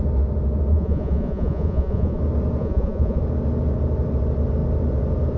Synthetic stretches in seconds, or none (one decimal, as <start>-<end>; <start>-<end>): 0.7-2.2; 2.6-3.2